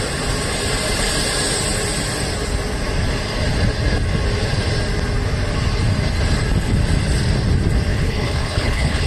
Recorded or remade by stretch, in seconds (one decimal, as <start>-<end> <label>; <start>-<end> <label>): 0.0-7.9 recorded; 7.9-9.1 remade